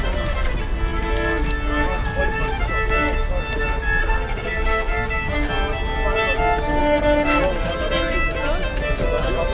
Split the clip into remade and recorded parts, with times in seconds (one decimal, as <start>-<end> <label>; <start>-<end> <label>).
0.0-4.0 recorded; 4.0-5.3 remade; 5.3-6.8 recorded; 6.8-7.4 remade; 7.4-9.5 recorded